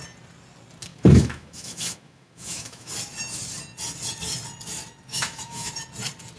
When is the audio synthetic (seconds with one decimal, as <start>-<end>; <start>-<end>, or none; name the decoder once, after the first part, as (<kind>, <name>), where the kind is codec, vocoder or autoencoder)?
0.9-2.9 (autoencoder, DAC-VAE); 5.1-5.7